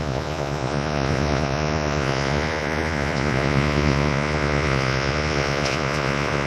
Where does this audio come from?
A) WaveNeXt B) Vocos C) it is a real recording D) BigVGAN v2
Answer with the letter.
B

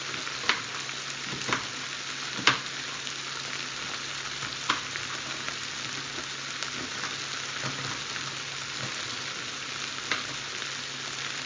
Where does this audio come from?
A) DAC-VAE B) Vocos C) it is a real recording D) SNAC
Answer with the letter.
C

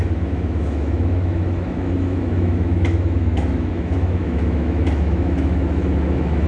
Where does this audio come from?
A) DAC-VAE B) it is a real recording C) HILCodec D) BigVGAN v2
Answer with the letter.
A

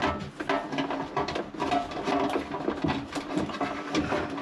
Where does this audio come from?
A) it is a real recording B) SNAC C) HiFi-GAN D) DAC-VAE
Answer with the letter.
A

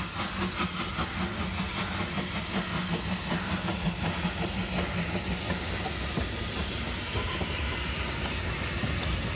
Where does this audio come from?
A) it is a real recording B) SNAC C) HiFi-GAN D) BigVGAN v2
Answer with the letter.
A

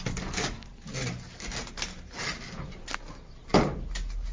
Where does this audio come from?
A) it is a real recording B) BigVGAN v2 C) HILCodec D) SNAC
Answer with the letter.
A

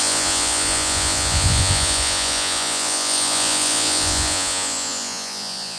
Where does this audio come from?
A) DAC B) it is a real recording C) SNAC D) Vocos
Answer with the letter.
D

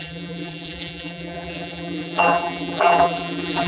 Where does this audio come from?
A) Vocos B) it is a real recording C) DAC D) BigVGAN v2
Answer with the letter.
D